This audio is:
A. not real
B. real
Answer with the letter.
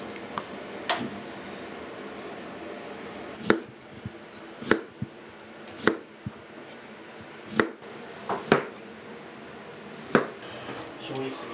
B